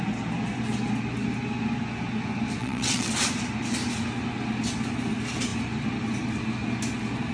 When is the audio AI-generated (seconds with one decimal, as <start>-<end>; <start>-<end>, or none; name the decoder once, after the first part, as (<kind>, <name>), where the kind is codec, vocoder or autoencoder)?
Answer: 2.6-3.1 (vocoder, WaveNeXt)